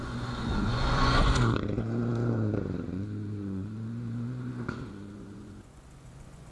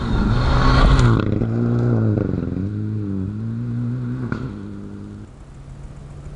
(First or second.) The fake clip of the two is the first